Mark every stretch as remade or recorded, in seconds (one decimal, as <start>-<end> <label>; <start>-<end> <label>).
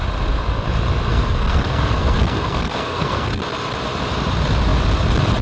0.0-1.1 recorded; 1.1-3.4 remade; 3.4-5.4 recorded